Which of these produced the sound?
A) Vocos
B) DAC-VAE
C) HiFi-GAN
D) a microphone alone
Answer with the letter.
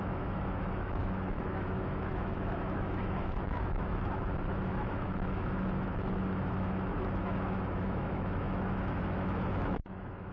B